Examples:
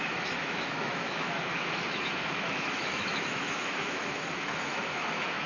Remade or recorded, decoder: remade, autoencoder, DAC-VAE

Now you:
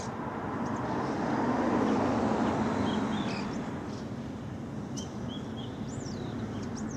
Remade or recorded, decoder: recorded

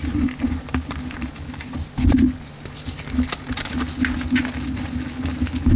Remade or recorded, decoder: recorded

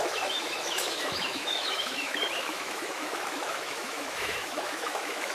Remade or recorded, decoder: remade, autoencoder, DAC-VAE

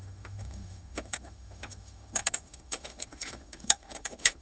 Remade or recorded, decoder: remade, autoencoder, DAC-VAE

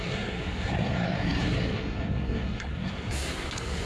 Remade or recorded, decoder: remade, codec, SNAC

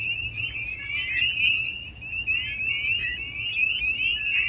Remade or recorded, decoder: remade, vocoder, BigVGAN v2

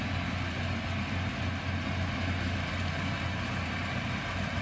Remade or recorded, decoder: recorded